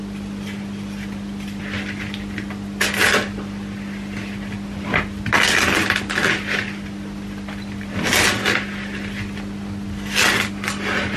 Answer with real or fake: real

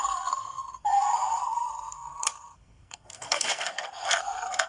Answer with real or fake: fake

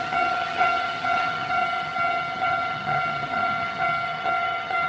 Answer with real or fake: fake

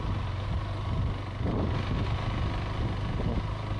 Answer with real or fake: real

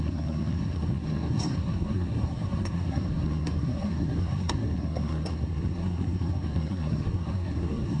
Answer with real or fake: fake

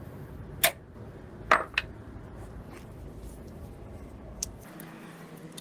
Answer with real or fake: real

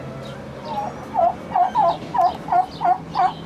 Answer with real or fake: real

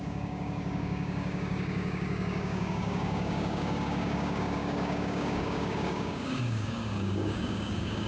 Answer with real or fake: fake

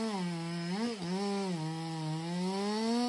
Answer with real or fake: real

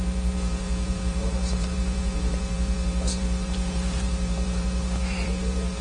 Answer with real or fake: fake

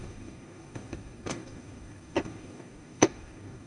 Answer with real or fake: fake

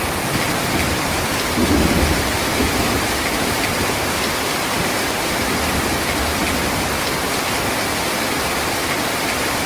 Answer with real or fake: real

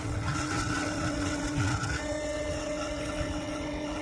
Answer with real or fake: fake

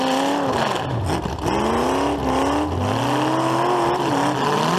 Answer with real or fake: real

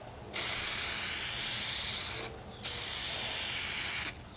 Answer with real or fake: real